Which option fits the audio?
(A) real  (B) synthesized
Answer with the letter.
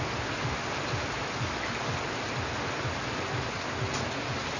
A